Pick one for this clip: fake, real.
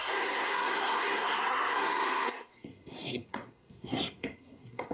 fake